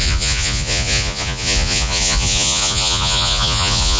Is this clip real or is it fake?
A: fake